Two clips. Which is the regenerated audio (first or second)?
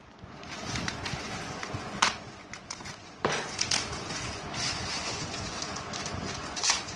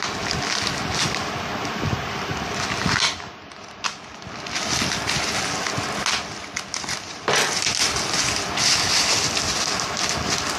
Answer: first